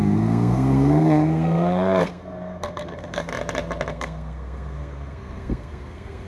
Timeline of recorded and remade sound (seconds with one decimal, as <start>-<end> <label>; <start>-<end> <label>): 0.0-3.3 remade; 3.3-3.9 recorded; 3.9-6.3 remade